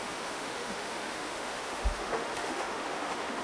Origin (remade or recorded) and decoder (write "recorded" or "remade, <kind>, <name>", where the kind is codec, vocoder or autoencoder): remade, autoencoder, DAC-VAE